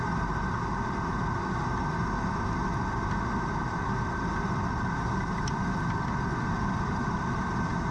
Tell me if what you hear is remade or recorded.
recorded